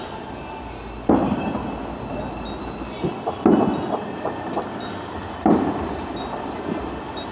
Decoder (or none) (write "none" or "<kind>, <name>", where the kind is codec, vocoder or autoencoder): none